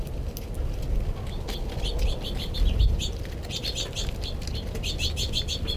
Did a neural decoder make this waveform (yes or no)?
no